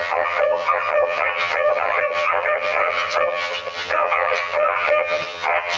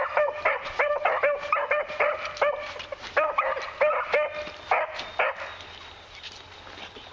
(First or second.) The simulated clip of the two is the first